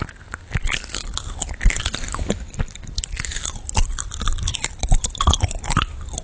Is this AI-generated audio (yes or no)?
no